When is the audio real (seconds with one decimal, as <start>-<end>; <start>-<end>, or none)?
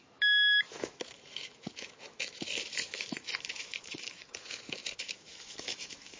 none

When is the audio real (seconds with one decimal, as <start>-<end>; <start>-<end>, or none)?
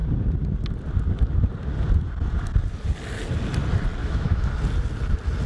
0.0-4.0; 4.5-5.5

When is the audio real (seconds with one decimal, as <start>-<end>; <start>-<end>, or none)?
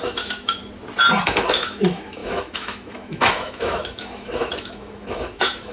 0.6-1.2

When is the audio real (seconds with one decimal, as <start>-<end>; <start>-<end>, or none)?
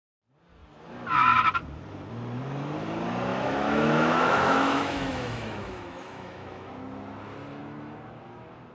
0.0-3.3; 6.7-8.7